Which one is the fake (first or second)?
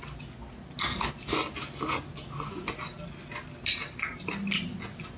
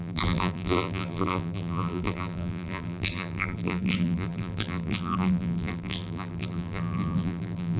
second